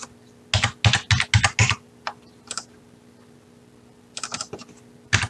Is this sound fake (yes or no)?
no